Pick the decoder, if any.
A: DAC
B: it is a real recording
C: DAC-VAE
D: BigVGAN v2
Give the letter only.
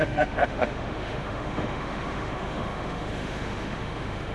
C